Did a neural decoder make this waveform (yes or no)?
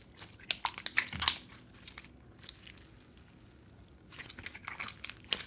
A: no